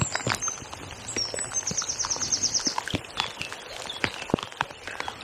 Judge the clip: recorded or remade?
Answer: recorded